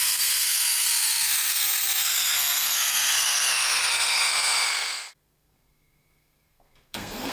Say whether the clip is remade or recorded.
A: remade